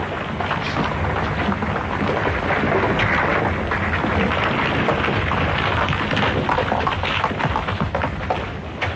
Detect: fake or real real